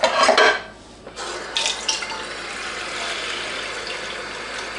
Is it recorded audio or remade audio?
recorded